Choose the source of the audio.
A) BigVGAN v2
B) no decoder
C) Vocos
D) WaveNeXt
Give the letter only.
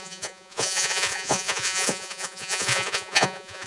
C